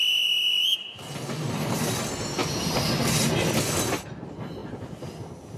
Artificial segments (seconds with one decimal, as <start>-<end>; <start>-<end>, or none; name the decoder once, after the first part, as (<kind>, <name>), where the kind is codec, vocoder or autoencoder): 4.6-5.6 (vocoder, BigVGAN v2)